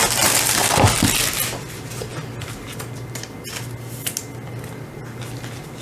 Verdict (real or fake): real